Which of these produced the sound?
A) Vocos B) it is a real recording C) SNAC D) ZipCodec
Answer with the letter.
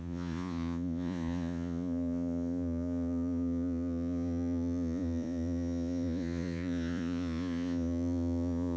A